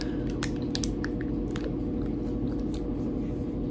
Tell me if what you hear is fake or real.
real